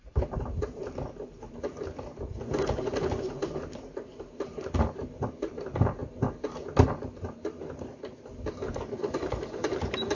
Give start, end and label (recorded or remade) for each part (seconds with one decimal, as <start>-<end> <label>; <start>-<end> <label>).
0.0-0.8 remade; 0.8-1.5 recorded; 1.5-6.0 remade; 6.0-8.7 recorded; 8.7-10.1 remade